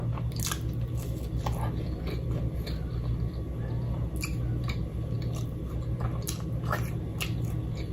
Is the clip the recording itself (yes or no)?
yes